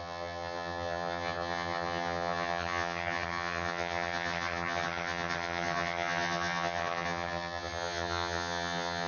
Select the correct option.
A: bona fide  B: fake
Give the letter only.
B